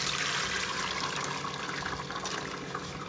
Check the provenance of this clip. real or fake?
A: real